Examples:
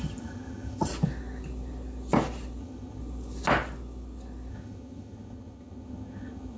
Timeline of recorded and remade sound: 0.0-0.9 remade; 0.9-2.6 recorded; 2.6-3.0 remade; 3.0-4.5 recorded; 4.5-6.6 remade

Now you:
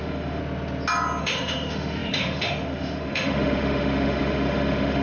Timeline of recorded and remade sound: 0.0-0.4 remade; 0.4-1.2 recorded; 1.2-5.0 remade

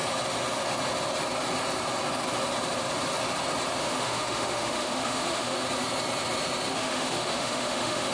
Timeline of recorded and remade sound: 0.0-3.8 recorded; 3.8-5.6 remade; 5.6-6.7 recorded; 6.7-8.1 remade